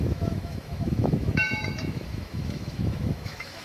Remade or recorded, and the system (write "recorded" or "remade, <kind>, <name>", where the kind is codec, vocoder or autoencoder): remade, autoencoder, DAC-VAE